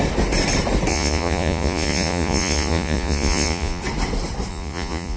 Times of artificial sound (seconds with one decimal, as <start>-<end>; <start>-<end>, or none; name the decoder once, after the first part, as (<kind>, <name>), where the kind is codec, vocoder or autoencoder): 0.9-3.8 (vocoder, Vocos); 4.5-5.2